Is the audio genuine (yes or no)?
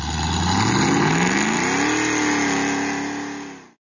yes